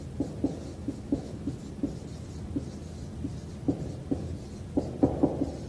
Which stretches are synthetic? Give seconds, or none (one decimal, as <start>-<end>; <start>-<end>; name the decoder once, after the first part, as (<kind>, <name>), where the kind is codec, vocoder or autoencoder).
0.7-1.6 (autoencoder, DAC-VAE)